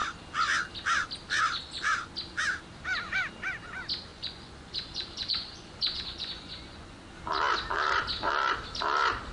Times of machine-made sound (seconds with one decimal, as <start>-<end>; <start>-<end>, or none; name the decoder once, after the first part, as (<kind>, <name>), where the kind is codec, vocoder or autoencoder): 4.1-7.0 (vocoder, Vocos)